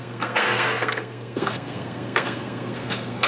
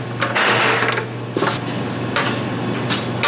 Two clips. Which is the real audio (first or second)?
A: second